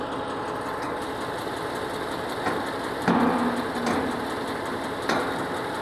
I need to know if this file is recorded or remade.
recorded